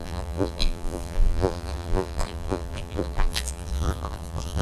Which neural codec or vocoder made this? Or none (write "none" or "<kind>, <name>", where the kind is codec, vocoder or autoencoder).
vocoder, BigVGAN v2